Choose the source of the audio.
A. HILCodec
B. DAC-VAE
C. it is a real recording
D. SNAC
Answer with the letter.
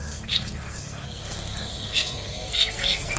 D